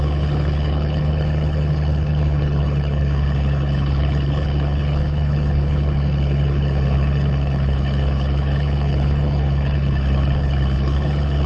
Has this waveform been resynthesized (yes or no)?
yes